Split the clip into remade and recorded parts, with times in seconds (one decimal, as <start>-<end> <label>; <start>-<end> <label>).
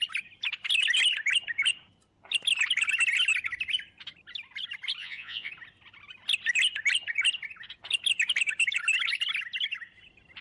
0.0-5.0 recorded; 5.0-5.5 remade; 5.5-10.4 recorded